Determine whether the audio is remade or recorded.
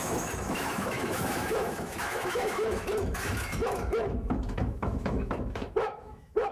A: remade